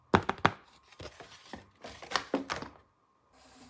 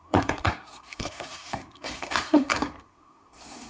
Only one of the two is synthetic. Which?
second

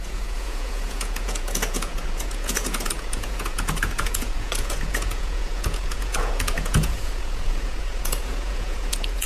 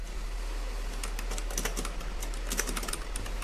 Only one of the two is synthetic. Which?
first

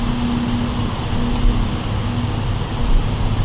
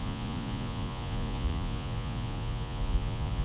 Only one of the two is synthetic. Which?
second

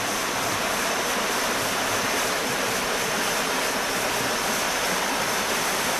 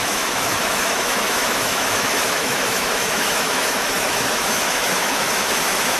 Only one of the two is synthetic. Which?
second